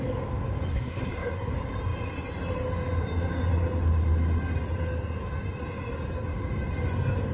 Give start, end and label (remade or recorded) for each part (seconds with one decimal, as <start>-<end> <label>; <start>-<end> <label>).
0.0-0.7 recorded; 0.7-1.5 remade; 1.5-7.3 recorded